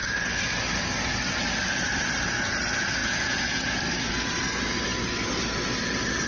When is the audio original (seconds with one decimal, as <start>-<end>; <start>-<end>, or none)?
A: 0.0-3.0; 3.6-6.3

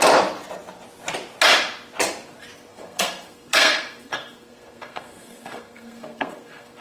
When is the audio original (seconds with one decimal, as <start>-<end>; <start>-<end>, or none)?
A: 0.0-2.7

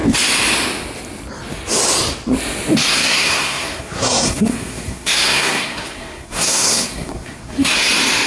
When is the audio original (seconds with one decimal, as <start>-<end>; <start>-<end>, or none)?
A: 0.0-2.9; 7.9-8.3

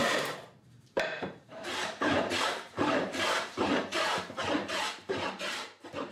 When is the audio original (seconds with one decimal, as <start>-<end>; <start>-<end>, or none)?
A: none

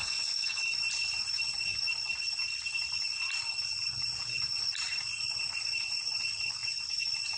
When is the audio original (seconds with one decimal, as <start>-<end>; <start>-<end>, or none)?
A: 0.7-7.4